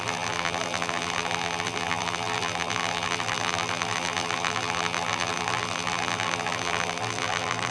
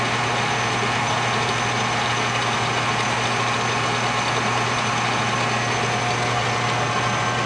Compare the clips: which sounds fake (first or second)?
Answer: first